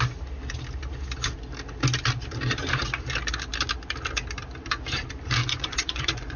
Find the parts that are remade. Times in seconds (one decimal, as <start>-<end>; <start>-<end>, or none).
5.4-6.4